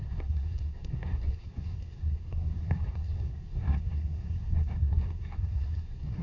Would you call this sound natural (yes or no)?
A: no